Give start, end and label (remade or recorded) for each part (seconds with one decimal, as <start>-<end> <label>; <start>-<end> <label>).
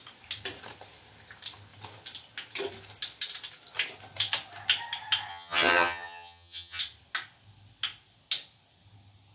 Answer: 0.0-5.3 recorded; 5.3-6.8 remade; 6.8-9.3 recorded